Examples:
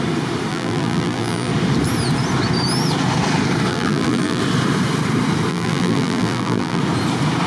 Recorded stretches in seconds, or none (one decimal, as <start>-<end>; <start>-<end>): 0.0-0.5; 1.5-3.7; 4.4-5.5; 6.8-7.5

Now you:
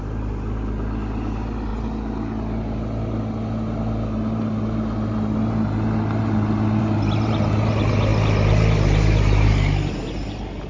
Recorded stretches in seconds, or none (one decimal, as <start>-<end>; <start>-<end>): 0.0-10.7

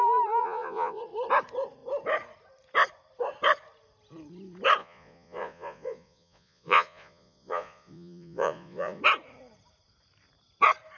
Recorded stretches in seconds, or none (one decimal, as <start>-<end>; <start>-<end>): 0.0-0.4; 1.0-4.8; 9.0-11.0

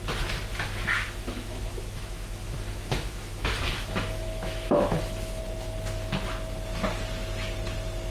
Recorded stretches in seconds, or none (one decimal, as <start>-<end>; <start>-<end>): 0.0-0.5; 5.4-8.1